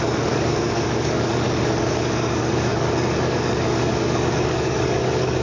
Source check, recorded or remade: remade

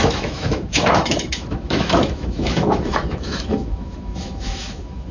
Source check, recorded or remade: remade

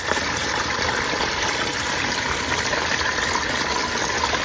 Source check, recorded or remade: recorded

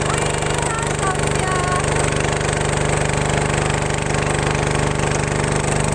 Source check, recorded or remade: recorded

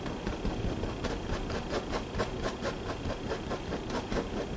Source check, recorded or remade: recorded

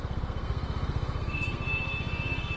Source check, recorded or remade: remade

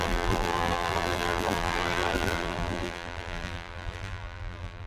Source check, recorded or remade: remade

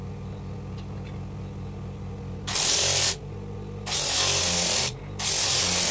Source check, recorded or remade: recorded